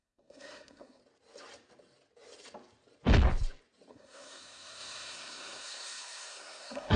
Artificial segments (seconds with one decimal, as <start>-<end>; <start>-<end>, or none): 0.0-1.0; 3.9-7.0